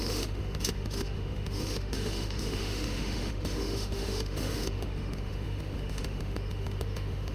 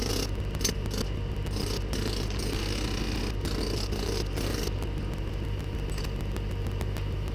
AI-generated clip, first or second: first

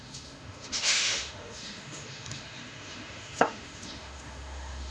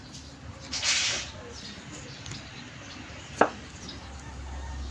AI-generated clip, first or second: first